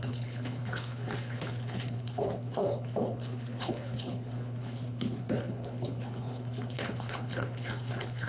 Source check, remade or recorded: remade